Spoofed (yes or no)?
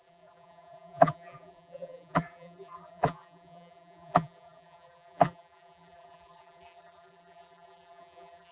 yes